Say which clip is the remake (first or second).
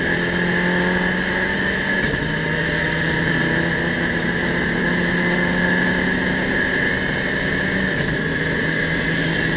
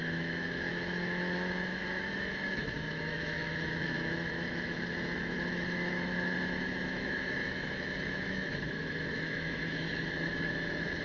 second